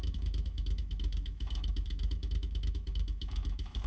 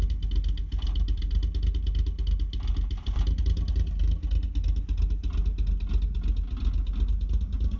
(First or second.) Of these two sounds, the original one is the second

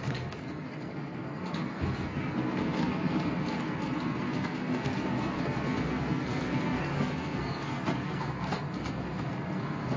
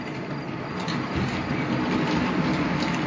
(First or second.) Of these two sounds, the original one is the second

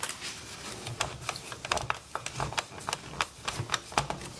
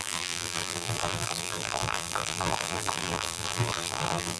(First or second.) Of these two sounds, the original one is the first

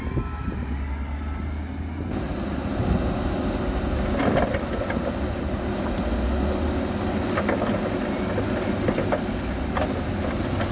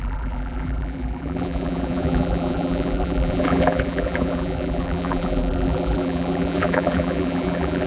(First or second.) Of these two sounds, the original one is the first